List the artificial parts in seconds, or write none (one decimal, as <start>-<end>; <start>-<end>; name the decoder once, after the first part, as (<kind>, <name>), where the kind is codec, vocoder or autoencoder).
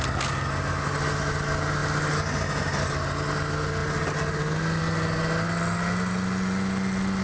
none